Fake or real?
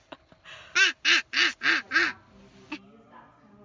real